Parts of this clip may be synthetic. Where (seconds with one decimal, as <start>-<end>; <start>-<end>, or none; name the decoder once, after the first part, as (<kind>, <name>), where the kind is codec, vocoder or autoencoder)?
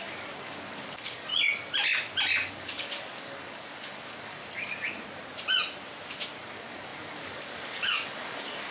0.0-1.3 (codec, DAC); 2.5-4.4; 6.4-8.7